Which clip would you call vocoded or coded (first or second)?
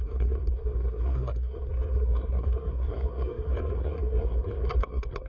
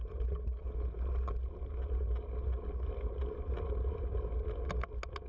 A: first